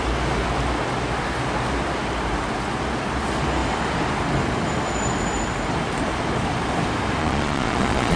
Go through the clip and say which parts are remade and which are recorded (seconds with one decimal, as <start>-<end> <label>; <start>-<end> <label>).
0.0-7.2 recorded; 7.2-8.2 remade